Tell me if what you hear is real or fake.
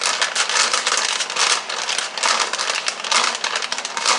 real